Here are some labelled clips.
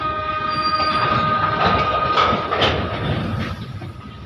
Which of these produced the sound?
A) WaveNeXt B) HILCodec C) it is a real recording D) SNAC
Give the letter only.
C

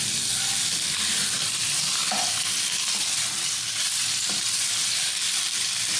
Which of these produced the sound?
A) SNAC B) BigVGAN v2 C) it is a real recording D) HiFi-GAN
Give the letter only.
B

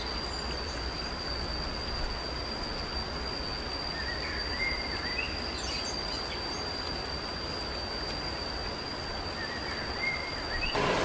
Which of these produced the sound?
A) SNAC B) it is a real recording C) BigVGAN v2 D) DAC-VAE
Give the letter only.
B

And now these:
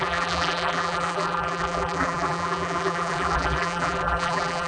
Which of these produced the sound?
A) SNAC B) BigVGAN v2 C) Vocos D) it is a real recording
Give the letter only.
B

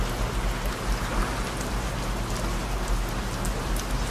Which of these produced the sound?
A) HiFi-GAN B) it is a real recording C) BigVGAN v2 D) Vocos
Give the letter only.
B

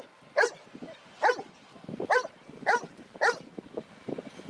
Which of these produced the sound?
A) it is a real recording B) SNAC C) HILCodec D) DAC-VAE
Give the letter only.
A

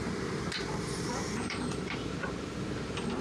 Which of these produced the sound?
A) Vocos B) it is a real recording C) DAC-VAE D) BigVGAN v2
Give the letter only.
D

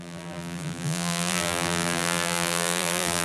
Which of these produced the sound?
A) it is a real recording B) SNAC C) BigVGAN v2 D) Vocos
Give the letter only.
C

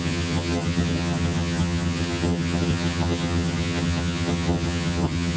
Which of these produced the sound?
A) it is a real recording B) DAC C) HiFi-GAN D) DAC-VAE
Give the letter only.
C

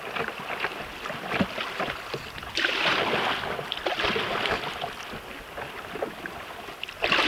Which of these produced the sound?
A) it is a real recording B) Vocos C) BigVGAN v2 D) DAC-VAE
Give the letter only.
A